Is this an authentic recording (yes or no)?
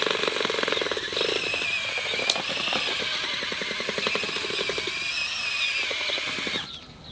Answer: yes